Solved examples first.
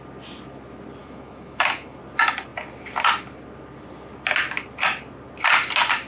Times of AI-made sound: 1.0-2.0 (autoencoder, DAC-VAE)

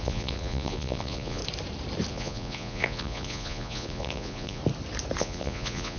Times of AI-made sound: 0.0-1.4 (vocoder, Vocos); 2.1-4.6; 5.2-6.0

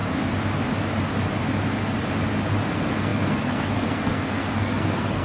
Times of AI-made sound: 2.7-5.2 (codec, SNAC)

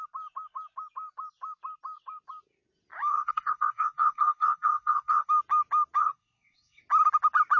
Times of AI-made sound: 3.1-5.3 (codec, SNAC); 6.0-6.8

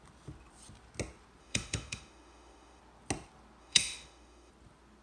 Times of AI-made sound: 1.4-2.8 (autoencoder, DAC-VAE); 3.6-4.5